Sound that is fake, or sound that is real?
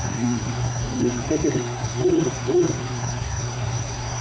fake